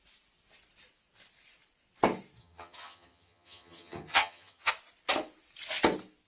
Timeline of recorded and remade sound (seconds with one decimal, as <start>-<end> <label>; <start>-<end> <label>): 0.0-2.4 recorded; 2.4-4.7 remade; 4.7-6.3 recorded